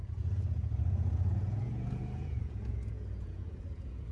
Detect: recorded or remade remade